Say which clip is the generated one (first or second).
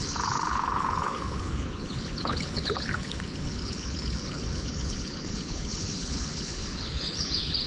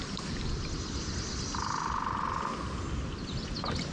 first